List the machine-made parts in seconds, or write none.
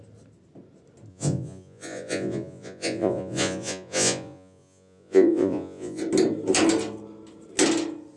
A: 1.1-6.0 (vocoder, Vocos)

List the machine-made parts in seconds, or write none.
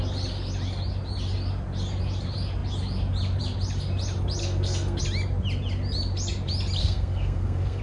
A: 4.4-5.0 (codec, SNAC); 6.8-7.8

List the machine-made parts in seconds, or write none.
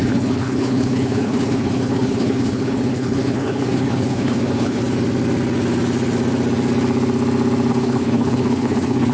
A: 0.0-4.8 (codec, HILCodec); 7.7-9.1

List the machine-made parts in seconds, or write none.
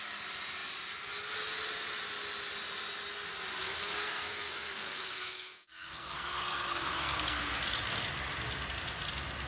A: 3.6-7.4 (codec, SNAC)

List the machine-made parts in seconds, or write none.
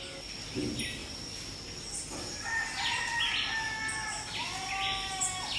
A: none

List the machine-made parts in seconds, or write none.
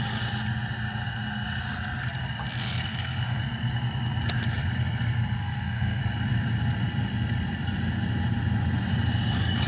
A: 2.6-3.4 (codec, SNAC); 5.4-6.0